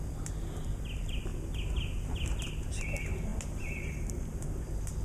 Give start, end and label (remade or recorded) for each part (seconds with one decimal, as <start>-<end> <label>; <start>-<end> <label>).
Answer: 0.0-5.0 recorded